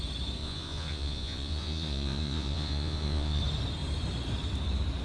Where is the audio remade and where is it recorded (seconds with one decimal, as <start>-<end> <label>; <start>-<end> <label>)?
0.0-0.4 recorded; 0.4-3.4 remade; 3.4-5.0 recorded